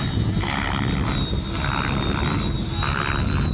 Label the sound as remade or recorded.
recorded